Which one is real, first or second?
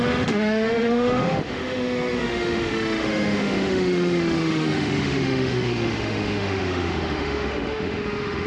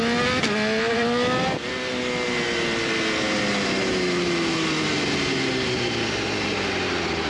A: second